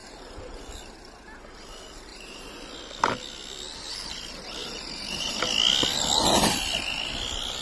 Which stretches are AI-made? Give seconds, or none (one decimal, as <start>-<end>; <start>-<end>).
0.0-0.6; 2.1-2.6; 4.6-5.4